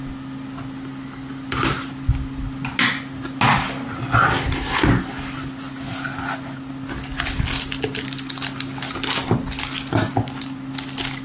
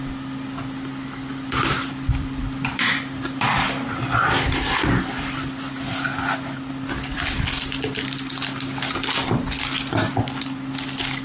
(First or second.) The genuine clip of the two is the first